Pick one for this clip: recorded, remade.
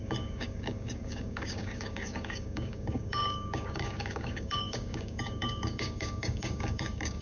remade